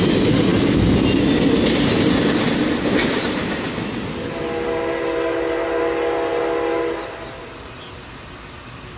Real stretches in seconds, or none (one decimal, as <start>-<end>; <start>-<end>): 0.0-9.0